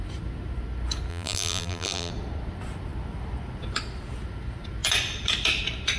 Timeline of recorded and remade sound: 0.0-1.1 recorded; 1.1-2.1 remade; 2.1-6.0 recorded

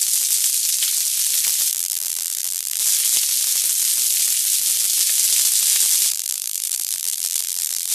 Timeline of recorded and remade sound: 0.0-1.7 recorded; 1.7-2.8 remade; 2.8-6.1 recorded; 6.1-7.9 remade

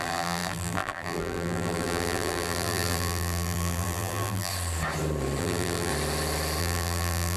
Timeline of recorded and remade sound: 0.0-4.5 remade; 4.5-5.4 recorded; 5.4-5.9 remade; 5.9-6.6 recorded; 6.6-7.4 remade

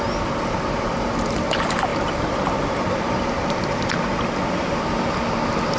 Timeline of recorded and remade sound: 0.0-1.9 recorded; 1.9-4.0 remade; 4.0-5.8 recorded